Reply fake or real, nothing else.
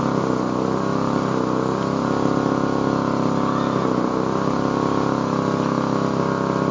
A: real